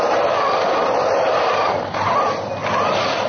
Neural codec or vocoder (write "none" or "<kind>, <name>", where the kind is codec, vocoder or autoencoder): none